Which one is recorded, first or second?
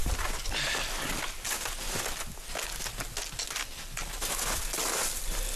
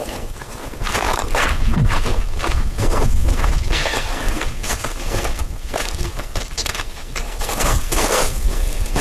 first